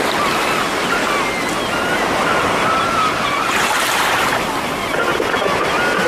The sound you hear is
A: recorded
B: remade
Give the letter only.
A